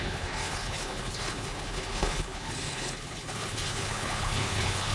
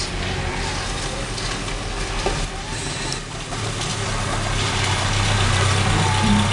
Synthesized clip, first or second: first